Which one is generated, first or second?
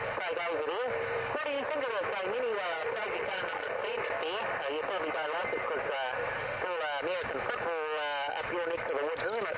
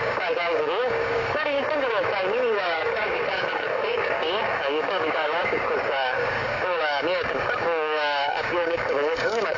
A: second